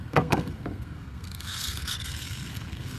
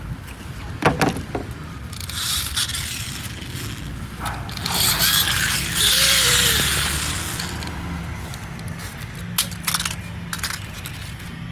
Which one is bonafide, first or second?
second